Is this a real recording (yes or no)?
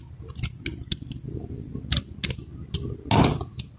yes